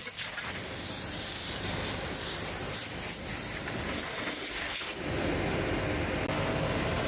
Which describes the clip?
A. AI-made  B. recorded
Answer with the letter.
B